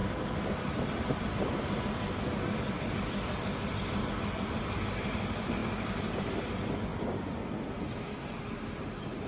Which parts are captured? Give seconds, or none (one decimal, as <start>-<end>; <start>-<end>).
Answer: 4.1-9.3